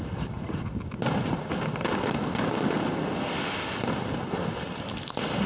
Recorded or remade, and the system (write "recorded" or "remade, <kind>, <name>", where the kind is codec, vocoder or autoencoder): recorded